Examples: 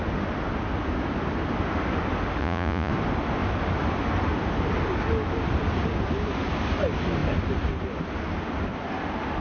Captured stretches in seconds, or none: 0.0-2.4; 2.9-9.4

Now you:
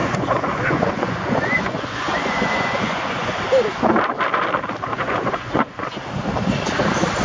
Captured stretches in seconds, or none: 3.4-4.9; 6.0-7.2